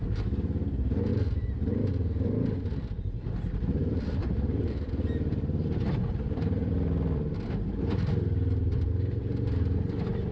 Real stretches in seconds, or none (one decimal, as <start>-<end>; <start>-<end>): 0.0-3.8; 8.9-10.3